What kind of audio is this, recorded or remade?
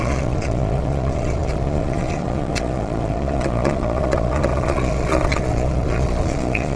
remade